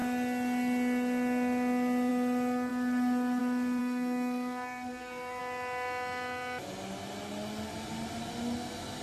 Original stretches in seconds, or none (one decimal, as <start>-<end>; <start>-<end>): 0.0-3.8; 5.4-9.0